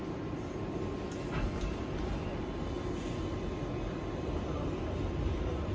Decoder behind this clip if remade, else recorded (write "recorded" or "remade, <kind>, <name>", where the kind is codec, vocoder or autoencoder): recorded